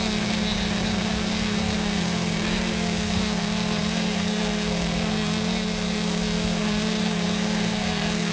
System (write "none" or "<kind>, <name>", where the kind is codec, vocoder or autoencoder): codec, SNAC